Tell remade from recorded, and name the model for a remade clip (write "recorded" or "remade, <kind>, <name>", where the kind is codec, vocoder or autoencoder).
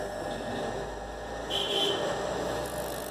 recorded